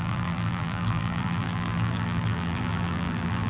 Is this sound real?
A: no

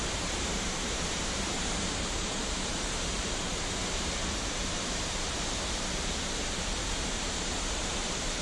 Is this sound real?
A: no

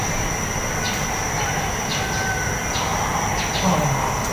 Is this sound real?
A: yes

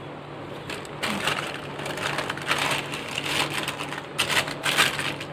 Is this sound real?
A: yes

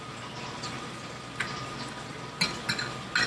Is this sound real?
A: yes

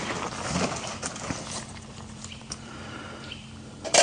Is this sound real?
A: no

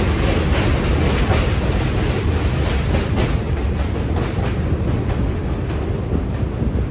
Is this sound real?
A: yes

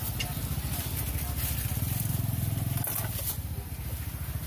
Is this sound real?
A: yes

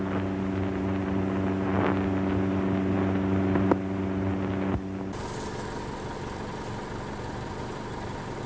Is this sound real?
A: yes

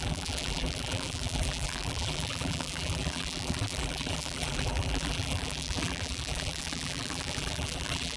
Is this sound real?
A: no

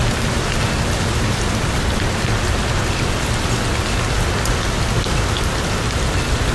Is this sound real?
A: yes